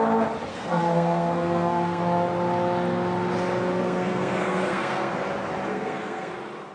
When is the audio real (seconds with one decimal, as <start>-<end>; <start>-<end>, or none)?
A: 0.0-0.5; 2.0-3.7; 5.1-5.7; 6.3-6.7